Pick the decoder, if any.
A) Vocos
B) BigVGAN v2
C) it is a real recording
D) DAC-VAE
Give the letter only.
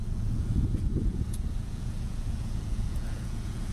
A